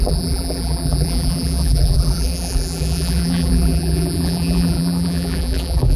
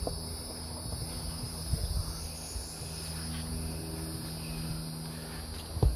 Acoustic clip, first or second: second